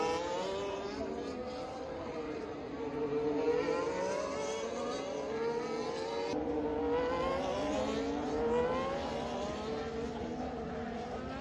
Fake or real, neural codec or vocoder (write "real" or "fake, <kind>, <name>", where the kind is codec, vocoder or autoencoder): real